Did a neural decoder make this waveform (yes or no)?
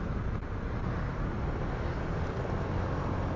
no